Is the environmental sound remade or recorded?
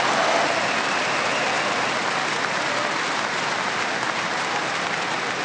recorded